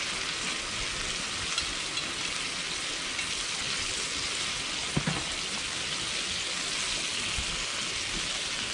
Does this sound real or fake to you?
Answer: real